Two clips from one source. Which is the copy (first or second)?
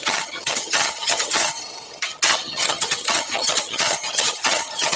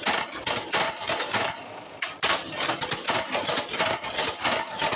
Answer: first